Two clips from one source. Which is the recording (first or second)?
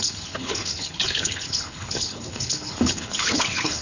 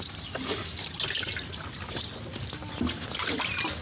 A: second